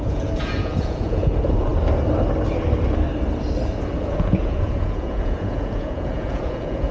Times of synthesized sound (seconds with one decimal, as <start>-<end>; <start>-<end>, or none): 0.0-1.7; 4.0-6.9